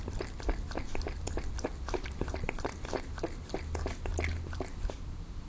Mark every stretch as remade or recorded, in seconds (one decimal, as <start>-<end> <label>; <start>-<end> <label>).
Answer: 0.0-1.7 remade; 1.7-2.3 recorded; 2.3-4.1 remade; 4.1-4.9 recorded; 4.9-5.5 remade